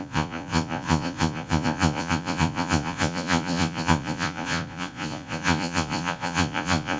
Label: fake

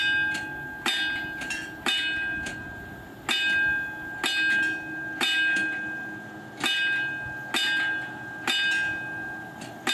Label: real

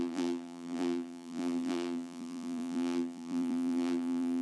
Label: fake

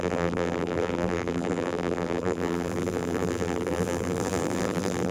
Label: fake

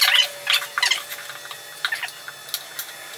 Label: real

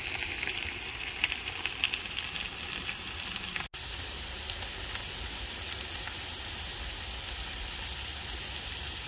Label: real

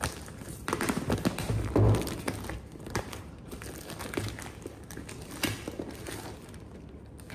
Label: real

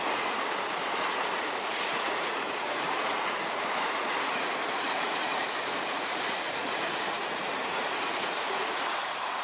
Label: fake